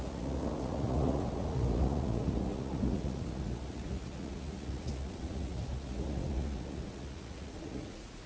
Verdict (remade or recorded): remade